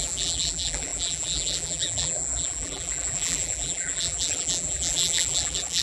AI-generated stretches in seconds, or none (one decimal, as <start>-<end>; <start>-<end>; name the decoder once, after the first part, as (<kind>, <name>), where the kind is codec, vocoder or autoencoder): 0.0-5.8 (vocoder, BigVGAN v2)